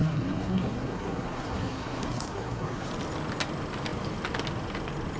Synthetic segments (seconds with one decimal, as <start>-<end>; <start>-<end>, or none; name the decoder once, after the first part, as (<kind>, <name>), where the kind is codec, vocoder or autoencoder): 0.0-2.9 (codec, SNAC)